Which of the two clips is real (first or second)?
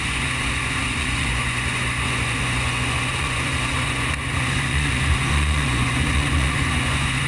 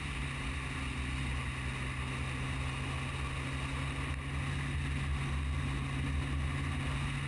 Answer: second